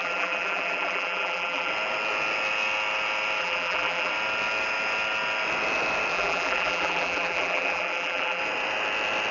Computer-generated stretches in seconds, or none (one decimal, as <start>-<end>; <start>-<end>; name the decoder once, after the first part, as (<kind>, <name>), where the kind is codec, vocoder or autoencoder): 0.0-1.7 (vocoder, BigVGAN v2); 3.4-4.1; 6.1-8.4